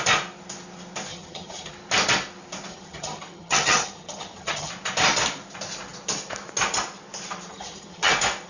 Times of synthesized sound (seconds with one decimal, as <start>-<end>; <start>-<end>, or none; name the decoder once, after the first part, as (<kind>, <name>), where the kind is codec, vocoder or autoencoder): 1.1-1.7 (vocoder, HiFi-GAN); 2.7-4.7; 7.5-8.1